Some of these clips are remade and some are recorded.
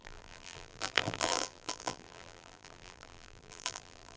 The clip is remade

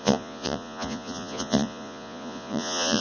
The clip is remade